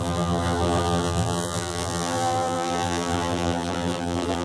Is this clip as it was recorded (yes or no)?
no